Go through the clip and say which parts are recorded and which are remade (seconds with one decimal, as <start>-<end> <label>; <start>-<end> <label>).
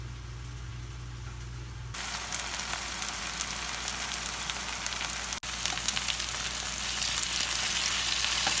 0.0-8.6 recorded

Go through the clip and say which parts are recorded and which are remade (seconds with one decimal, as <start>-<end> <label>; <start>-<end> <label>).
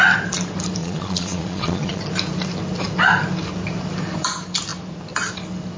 0.0-0.8 recorded; 0.8-2.0 remade; 2.0-5.8 recorded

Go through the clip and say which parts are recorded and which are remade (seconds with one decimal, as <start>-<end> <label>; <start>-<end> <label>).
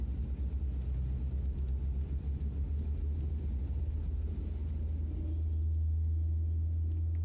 0.0-7.2 recorded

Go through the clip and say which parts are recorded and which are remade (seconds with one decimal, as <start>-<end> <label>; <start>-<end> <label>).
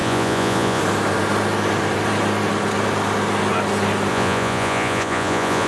0.0-0.8 remade; 0.8-4.1 recorded; 4.1-5.7 remade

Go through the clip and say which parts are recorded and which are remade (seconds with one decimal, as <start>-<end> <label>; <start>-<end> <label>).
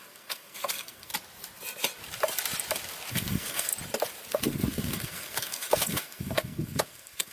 0.0-1.1 remade; 1.1-3.1 recorded; 3.1-3.7 remade; 3.7-4.3 recorded; 4.3-7.3 remade